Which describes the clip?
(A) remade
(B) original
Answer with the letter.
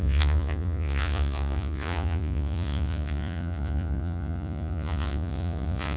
A